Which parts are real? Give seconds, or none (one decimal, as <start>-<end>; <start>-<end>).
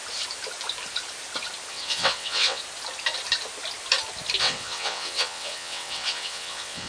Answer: 0.0-1.7; 2.6-4.4